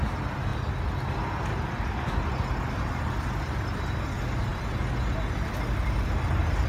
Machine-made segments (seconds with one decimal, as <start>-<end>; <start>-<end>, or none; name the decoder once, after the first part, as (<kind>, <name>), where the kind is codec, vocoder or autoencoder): none